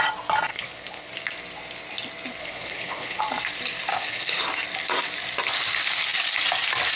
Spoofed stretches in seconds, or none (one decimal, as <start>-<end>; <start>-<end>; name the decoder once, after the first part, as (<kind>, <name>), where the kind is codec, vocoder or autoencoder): 0.5-1.1 (codec, HILCodec); 2.4-3.2; 3.9-4.4